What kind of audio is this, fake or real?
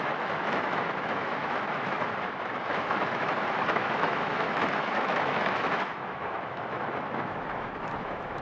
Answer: fake